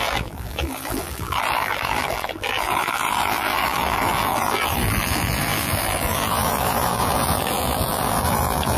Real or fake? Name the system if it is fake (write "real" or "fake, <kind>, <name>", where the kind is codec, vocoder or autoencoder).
fake, vocoder, BigVGAN v2